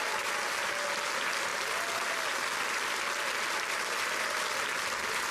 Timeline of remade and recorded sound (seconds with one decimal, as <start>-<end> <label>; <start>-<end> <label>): 0.0-5.3 recorded

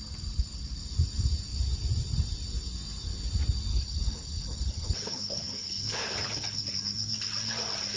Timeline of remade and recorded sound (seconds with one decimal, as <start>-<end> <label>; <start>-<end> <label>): 0.0-3.7 recorded; 3.7-6.7 remade; 6.7-8.0 recorded

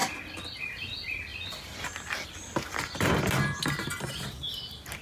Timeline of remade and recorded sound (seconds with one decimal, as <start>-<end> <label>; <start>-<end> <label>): 0.0-5.0 recorded

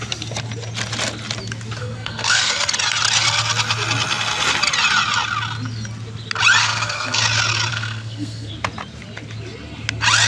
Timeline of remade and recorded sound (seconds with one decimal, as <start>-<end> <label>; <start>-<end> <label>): 0.0-1.8 recorded; 1.8-2.5 remade; 2.5-6.6 recorded; 6.6-7.2 remade; 7.2-7.7 recorded; 7.7-8.5 remade; 8.5-10.3 recorded

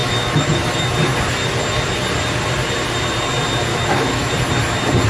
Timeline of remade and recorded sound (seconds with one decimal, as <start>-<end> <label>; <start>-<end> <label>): 0.0-0.8 remade; 0.8-3.7 recorded; 3.7-4.3 remade; 4.3-5.1 recorded

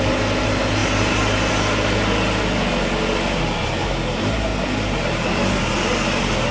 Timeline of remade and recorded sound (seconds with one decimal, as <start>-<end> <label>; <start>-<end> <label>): 0.0-6.5 recorded

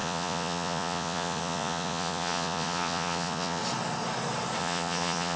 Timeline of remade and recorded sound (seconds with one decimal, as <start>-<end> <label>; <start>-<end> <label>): 0.0-3.6 remade; 3.6-4.6 recorded; 4.6-5.4 remade

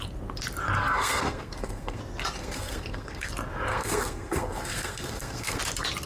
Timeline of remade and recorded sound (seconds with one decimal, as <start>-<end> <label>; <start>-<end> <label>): 0.0-0.8 recorded; 0.8-2.0 remade; 2.0-2.4 recorded; 2.4-3.3 remade; 3.3-3.7 recorded; 3.7-5.6 remade; 5.6-6.1 recorded